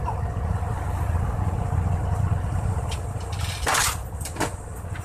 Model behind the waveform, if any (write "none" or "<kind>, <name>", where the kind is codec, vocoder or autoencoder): none